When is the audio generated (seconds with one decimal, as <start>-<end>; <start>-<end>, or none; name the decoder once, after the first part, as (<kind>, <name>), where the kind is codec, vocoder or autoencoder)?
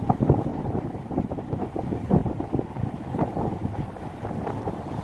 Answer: 0.5-1.1 (vocoder, BigVGAN v2); 2.2-2.7